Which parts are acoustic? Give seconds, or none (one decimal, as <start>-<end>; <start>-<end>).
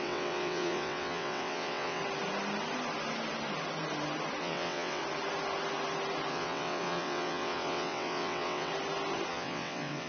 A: 2.0-4.4; 5.0-6.3; 8.7-9.3